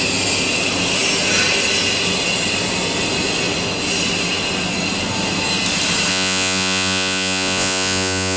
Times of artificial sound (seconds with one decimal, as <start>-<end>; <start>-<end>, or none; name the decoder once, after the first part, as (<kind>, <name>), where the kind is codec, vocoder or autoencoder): 6.1-8.4 (vocoder, Vocos)